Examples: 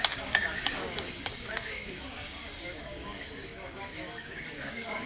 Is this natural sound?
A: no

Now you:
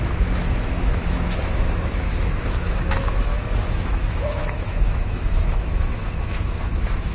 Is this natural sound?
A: no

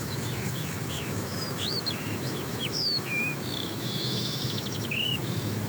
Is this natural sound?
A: no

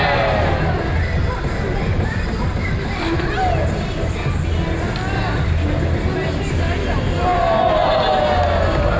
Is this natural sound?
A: yes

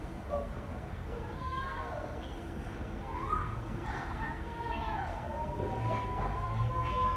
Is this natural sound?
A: no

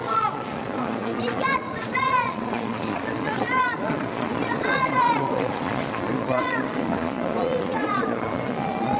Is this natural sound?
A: no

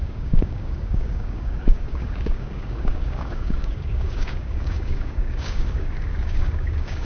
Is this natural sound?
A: no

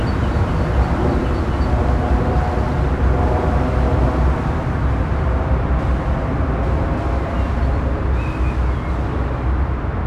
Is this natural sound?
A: yes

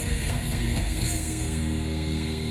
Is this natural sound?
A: no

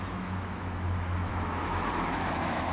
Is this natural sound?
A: no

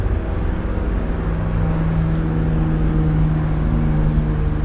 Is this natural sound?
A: yes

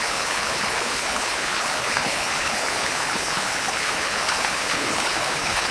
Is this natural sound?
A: no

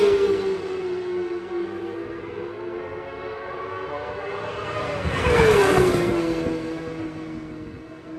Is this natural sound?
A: no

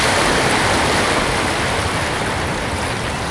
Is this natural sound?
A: yes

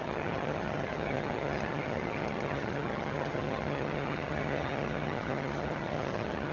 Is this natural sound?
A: no